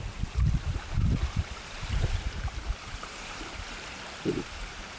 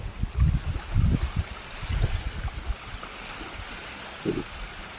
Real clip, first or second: second